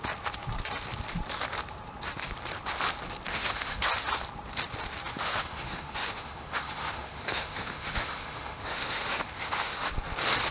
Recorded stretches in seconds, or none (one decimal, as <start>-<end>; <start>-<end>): 0.0-3.3; 3.9-5.2; 9.9-10.5